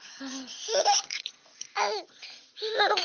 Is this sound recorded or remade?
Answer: remade